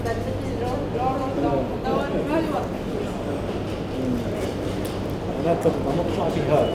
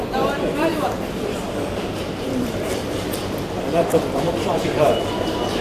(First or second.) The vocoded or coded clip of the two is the second